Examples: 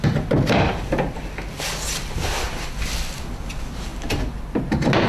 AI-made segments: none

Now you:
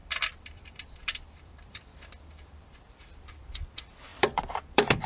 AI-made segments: 0.0-3.1 (vocoder, BigVGAN v2); 4.1-5.1